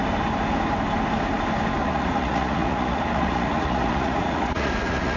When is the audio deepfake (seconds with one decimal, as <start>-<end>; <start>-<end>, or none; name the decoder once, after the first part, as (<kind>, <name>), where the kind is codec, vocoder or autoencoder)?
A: 1.8-5.2 (vocoder, Vocos)